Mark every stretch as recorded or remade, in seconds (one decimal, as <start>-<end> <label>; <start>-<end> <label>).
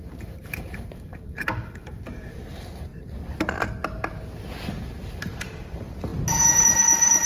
0.0-2.9 remade; 2.9-5.1 recorded; 5.1-6.1 remade; 6.1-6.6 recorded; 6.6-7.3 remade